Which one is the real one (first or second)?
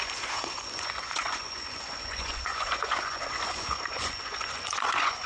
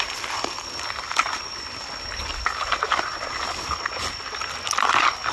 second